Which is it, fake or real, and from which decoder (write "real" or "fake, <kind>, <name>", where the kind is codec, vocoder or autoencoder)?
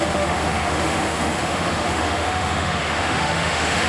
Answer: fake, autoencoder, DAC-VAE